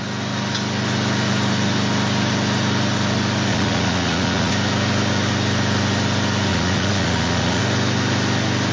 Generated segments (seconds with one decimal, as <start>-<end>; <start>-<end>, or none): 3.5-4.5; 6.5-7.6